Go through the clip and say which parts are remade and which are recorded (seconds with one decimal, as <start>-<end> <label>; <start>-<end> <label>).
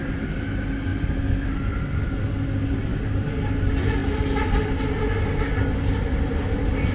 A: 0.0-2.9 recorded; 2.9-3.4 remade; 3.4-6.9 recorded